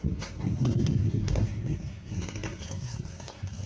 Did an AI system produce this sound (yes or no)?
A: yes